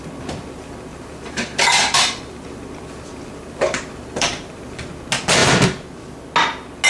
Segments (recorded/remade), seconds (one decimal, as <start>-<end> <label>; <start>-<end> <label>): 0.0-0.9 recorded; 0.9-5.0 remade; 5.0-5.4 recorded; 5.4-6.0 remade; 6.0-6.9 recorded